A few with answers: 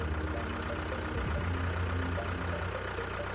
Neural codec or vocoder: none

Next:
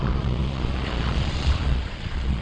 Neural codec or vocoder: vocoder, Vocos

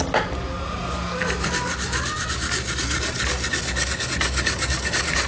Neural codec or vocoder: none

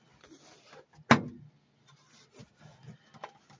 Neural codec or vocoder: none